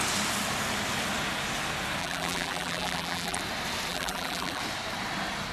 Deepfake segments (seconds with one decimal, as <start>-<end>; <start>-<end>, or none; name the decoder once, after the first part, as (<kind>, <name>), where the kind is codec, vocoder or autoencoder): 2.0-3.4 (vocoder, BigVGAN v2); 3.9-4.6